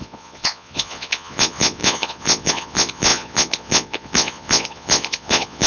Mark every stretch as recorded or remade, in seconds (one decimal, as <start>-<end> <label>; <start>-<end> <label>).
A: 0.0-5.7 remade